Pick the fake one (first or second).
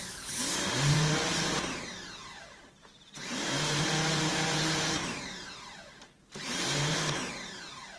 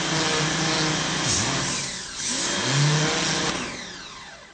first